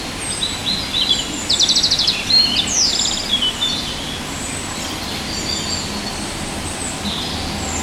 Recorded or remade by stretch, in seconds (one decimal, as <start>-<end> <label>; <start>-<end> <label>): 0.0-7.8 recorded